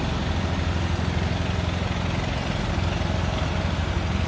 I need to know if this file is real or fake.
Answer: real